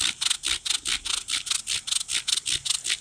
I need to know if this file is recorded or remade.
recorded